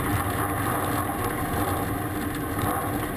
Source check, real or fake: real